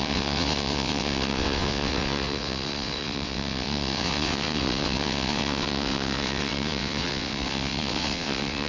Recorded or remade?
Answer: remade